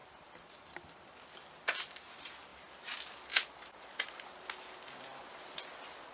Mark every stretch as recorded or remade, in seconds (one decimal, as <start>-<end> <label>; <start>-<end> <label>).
0.0-6.1 recorded